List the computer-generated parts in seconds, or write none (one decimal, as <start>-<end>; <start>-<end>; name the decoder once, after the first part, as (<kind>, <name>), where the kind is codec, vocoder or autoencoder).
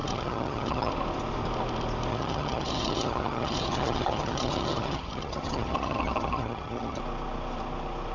0.0-0.9 (vocoder, HiFi-GAN); 2.1-7.0